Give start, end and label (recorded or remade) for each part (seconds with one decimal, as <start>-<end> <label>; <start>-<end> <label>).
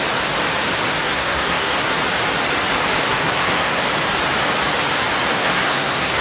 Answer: 0.0-1.0 recorded; 1.0-1.9 remade; 1.9-3.1 recorded; 3.1-3.8 remade; 3.8-5.3 recorded; 5.3-6.2 remade